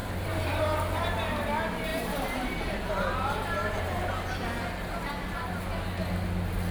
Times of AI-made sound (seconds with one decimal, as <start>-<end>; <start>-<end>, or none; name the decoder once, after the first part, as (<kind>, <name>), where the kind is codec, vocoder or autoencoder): 0.0-0.6 (vocoder, BigVGAN v2); 1.9-4.1

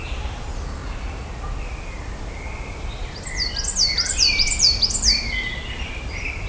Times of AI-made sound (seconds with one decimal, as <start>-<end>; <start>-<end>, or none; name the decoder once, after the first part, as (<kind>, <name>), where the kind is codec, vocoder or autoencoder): 0.0-0.8 (vocoder, BigVGAN v2); 1.6-6.5

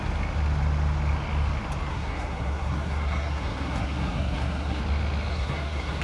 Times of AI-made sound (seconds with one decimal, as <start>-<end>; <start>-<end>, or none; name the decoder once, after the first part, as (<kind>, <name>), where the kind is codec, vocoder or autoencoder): 1.9-4.8 (codec, SNAC); 5.3-6.0

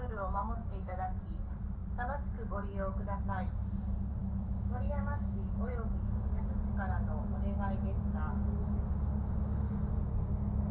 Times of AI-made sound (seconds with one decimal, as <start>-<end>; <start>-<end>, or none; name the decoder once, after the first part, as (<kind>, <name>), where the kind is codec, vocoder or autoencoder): 0.6-1.2 (autoencoder, DAC-VAE); 4.2-5.5

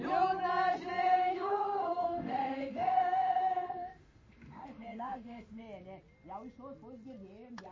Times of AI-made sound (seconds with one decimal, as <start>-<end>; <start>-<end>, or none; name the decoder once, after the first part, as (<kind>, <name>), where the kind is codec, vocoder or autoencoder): 1.0-5.6 (autoencoder, DAC-VAE)